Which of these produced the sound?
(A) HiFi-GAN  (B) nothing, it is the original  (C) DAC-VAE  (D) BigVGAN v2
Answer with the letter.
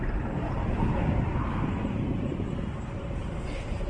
D